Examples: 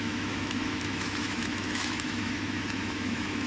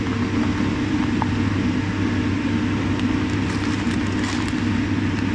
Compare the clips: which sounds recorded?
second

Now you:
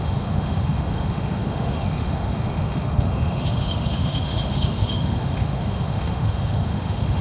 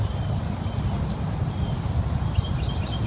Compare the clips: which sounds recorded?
second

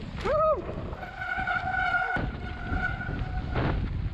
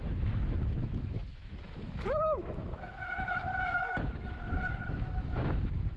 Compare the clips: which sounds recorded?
first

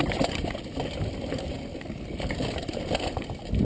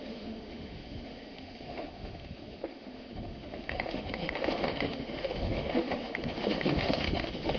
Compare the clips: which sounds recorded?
first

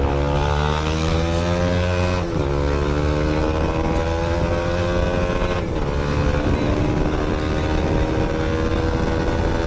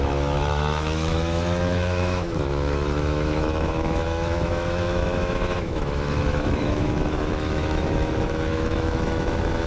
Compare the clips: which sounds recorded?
first